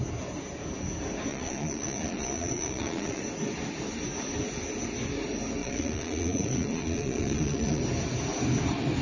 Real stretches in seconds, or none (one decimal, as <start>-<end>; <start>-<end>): 0.0-1.3; 3.2-5.6; 7.8-9.0